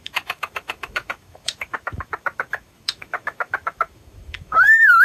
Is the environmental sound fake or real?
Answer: fake